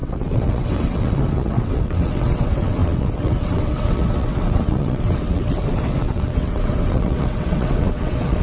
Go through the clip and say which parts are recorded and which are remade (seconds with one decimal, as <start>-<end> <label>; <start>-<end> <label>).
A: 0.0-8.4 remade